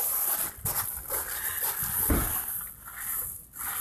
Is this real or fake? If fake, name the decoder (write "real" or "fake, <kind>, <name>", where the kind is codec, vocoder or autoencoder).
real